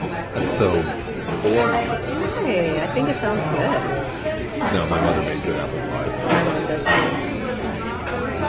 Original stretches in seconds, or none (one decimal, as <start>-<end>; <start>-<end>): 0.0-1.3; 1.9-8.5